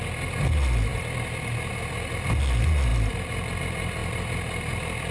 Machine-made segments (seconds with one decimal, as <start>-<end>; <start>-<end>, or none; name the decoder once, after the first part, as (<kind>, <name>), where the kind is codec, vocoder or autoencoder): none